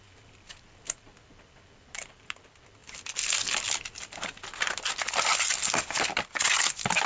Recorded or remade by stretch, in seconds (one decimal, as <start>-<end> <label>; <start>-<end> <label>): 0.0-7.1 recorded

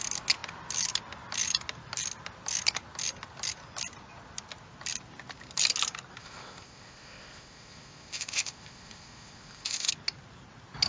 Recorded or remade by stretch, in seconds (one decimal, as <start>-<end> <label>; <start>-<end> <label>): 0.0-6.2 recorded; 6.2-9.9 remade; 9.9-10.9 recorded

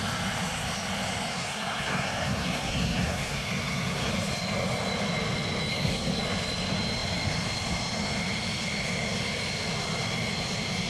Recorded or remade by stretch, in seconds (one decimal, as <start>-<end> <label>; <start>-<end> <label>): 0.0-1.3 recorded; 1.3-4.1 remade; 4.1-5.7 recorded; 5.7-6.2 remade; 6.2-10.9 recorded

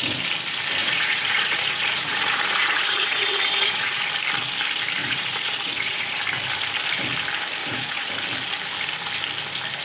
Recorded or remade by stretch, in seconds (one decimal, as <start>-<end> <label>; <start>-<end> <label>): 0.0-0.8 recorded; 0.8-4.1 remade; 4.1-5.0 recorded; 5.0-6.2 remade; 6.2-7.6 recorded; 7.6-8.1 remade; 8.1-9.8 recorded

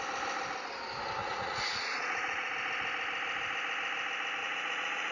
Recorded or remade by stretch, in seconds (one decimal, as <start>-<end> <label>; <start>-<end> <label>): 0.0-1.2 recorded; 1.2-2.5 remade; 2.5-4.4 recorded; 4.4-5.1 remade

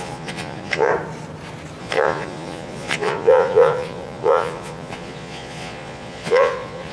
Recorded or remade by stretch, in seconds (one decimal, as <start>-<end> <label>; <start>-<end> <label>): 0.0-0.9 remade; 0.9-1.8 recorded; 1.8-6.9 remade

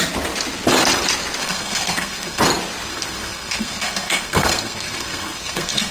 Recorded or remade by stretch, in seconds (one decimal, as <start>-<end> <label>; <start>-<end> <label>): 0.0-1.4 recorded; 1.4-2.4 remade; 2.4-2.9 recorded; 2.9-5.9 remade

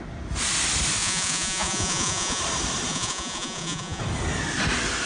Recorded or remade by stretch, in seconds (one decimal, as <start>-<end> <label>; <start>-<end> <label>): 0.0-1.0 recorded; 1.0-2.4 remade; 2.4-2.9 recorded; 2.9-4.0 remade; 4.0-5.1 recorded